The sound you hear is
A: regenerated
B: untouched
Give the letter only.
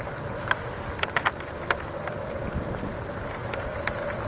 A